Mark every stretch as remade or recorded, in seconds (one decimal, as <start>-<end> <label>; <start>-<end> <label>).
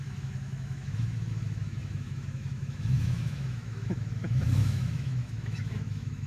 0.0-6.3 remade